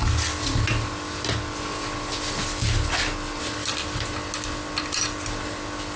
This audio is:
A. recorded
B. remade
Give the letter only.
A